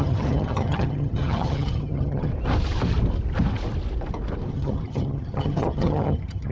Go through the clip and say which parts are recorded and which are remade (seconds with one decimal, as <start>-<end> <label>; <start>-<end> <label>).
0.0-2.3 remade; 2.3-4.5 recorded; 4.5-6.5 remade

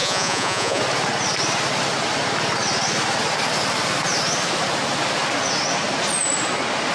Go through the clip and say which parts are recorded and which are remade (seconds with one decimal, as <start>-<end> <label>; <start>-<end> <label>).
0.0-0.8 remade; 0.8-6.9 recorded

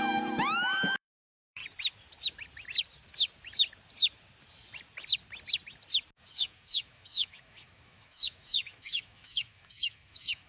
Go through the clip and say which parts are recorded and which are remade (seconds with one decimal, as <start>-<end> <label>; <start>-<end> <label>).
0.0-1.6 remade; 1.6-6.7 recorded; 6.7-10.5 remade

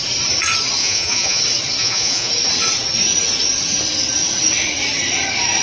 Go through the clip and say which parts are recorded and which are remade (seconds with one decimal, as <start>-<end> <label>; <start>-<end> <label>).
0.0-0.8 recorded; 0.8-1.4 remade; 1.4-1.8 recorded; 1.8-2.3 remade; 2.3-5.6 recorded

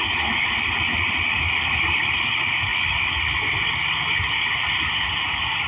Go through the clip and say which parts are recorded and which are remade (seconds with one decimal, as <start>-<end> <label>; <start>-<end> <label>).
0.0-5.7 recorded

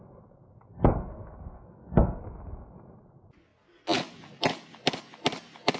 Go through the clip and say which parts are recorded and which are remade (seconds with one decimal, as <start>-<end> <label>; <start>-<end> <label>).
0.0-1.0 recorded; 1.0-2.2 remade; 2.2-5.8 recorded

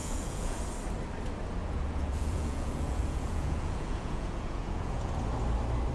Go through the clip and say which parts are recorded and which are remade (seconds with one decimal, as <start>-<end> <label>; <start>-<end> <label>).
0.0-0.6 remade; 0.6-1.6 recorded; 1.6-5.1 remade; 5.1-5.9 recorded

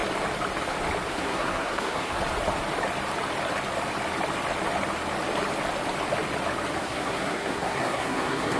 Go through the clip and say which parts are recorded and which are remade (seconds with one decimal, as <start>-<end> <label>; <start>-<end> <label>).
0.0-1.1 recorded; 1.1-2.2 remade; 2.2-6.8 recorded; 6.8-8.6 remade